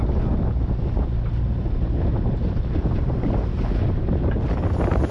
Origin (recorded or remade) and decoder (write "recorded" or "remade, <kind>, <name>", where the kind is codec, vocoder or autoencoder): recorded